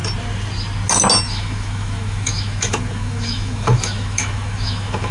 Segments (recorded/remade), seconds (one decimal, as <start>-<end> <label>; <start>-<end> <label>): 0.0-1.3 recorded; 1.3-5.1 remade